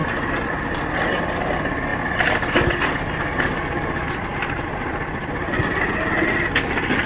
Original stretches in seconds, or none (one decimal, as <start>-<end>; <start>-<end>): 0.0-7.1